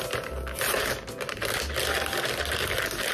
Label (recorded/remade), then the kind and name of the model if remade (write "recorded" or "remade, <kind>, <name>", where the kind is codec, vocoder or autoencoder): recorded